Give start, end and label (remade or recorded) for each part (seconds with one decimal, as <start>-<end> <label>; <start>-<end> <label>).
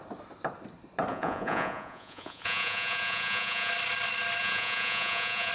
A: 0.0-1.1 recorded; 1.1-3.7 remade; 3.7-4.4 recorded; 4.4-5.5 remade